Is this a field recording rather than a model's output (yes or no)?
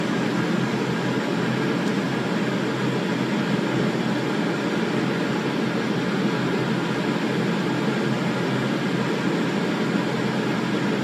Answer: yes